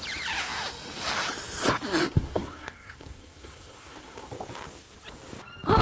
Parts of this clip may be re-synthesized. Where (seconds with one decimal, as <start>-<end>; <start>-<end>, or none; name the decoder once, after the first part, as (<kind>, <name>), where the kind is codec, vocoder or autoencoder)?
2.0-4.3 (codec, SNAC)